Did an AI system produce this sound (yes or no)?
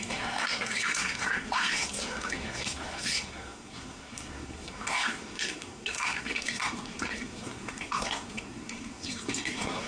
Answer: yes